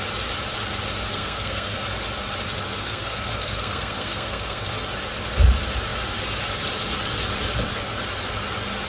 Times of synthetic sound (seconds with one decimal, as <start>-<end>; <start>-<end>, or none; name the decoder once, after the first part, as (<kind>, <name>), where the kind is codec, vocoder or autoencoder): 1.1-1.8 (codec, SNAC); 2.7-4.7

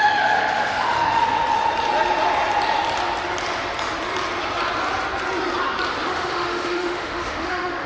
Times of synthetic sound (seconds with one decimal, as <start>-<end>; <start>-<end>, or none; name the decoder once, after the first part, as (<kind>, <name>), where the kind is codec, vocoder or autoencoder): 0.0-1.2 (autoencoder, DAC-VAE); 5.9-7.9